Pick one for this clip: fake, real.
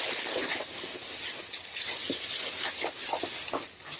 real